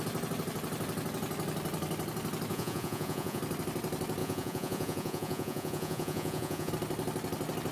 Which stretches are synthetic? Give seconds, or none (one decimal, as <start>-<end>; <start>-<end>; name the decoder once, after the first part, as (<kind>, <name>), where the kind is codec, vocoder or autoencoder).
2.5-3.4 (vocoder, Vocos); 4.2-6.7